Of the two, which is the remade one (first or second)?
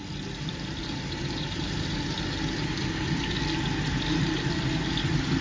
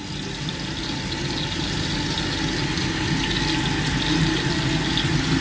first